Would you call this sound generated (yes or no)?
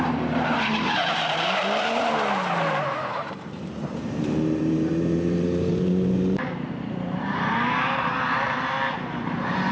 yes